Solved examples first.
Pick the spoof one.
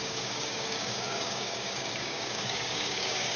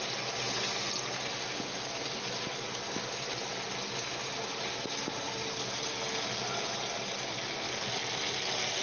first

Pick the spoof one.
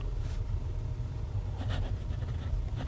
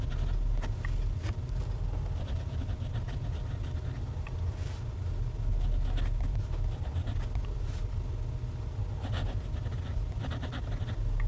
first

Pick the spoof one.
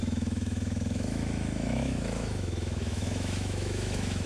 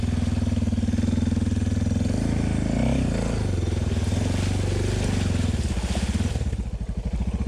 first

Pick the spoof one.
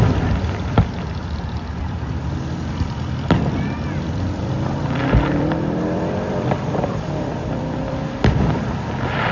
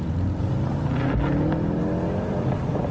first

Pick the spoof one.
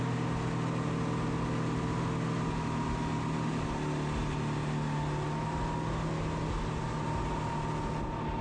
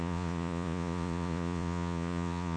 second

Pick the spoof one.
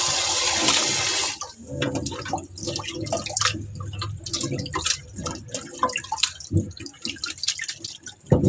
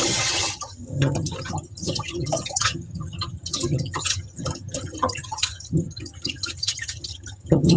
second